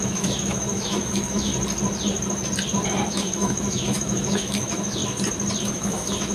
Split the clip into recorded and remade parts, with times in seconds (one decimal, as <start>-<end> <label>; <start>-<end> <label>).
0.0-1.5 remade; 1.5-3.1 recorded; 3.1-5.0 remade; 5.0-5.6 recorded; 5.6-6.3 remade